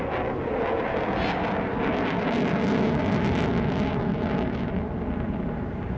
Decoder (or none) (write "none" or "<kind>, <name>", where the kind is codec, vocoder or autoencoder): none